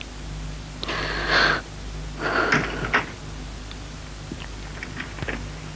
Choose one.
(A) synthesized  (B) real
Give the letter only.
B